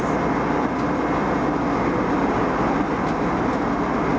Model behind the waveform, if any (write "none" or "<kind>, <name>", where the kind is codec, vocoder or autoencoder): none